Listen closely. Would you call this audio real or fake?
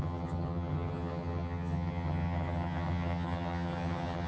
fake